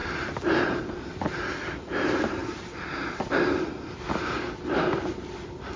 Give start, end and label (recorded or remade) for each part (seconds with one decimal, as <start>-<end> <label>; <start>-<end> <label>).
0.0-5.8 recorded